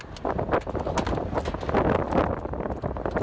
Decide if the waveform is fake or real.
real